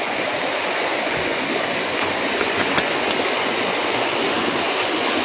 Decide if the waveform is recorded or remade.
remade